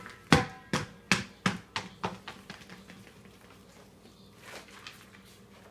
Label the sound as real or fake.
real